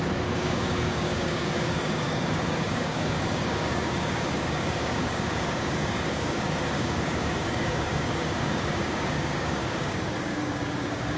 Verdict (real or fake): fake